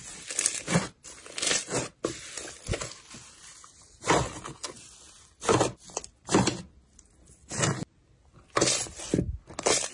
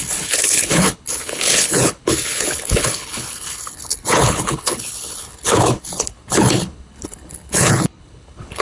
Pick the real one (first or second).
first